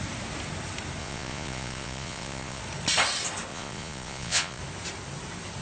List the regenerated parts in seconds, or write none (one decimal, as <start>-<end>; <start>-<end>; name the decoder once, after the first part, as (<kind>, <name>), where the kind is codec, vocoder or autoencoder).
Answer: 1.0-2.6 (vocoder, Vocos); 3.5-4.6